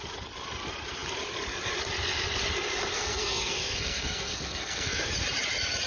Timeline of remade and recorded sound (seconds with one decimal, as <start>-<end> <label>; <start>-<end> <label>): 0.0-2.9 recorded; 2.9-5.1 remade; 5.1-5.9 recorded